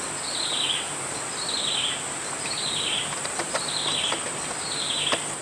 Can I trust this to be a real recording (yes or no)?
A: no